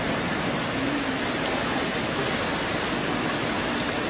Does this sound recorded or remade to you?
recorded